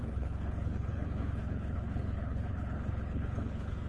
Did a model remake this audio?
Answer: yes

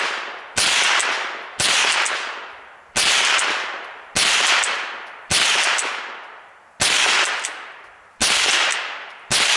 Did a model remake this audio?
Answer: no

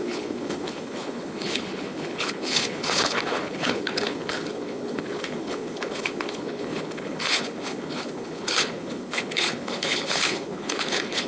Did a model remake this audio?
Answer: yes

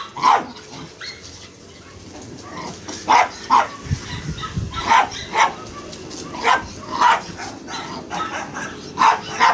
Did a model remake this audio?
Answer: no